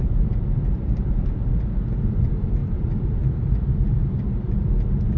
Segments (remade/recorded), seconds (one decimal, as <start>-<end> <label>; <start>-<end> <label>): 0.0-1.1 remade; 1.1-2.6 recorded; 2.6-4.7 remade; 4.7-5.2 recorded